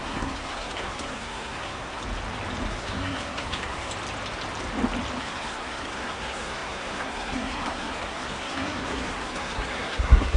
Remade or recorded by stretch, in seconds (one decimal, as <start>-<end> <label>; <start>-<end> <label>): 0.0-2.0 remade; 2.0-2.7 recorded; 2.7-3.9 remade; 3.9-5.2 recorded; 5.2-10.4 remade